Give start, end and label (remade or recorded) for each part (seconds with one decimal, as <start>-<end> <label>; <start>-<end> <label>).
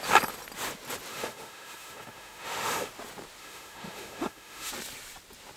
0.0-1.1 recorded; 1.1-2.9 remade; 2.9-3.4 recorded; 3.4-4.7 remade; 4.7-5.6 recorded